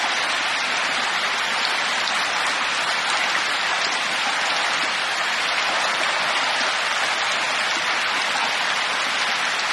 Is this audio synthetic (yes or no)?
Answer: no